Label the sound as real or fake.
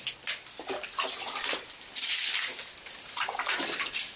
real